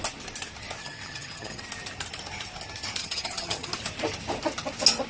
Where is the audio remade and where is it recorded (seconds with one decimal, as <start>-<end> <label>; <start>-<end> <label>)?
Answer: 0.0-0.8 recorded; 0.8-1.6 remade; 1.6-3.0 recorded; 3.0-3.7 remade; 3.7-5.1 recorded